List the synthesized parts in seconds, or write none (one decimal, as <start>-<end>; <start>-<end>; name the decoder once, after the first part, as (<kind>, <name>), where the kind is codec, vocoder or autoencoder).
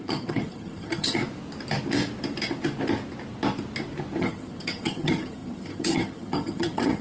0.0-1.2 (vocoder, HiFi-GAN); 4.2-7.0